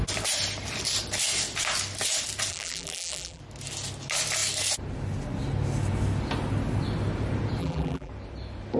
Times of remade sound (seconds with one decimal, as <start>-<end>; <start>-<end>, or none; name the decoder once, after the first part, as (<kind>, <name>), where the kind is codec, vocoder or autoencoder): 2.5-3.4 (vocoder, BigVGAN v2); 7.6-8.1